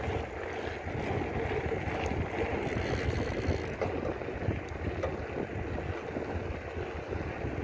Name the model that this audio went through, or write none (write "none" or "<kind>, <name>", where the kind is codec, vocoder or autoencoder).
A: none